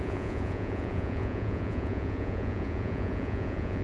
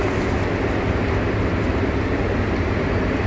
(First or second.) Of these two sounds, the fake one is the first